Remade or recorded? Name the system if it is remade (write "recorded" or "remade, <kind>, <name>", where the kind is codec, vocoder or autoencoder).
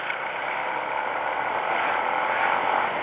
recorded